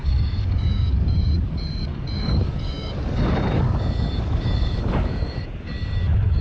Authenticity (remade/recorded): remade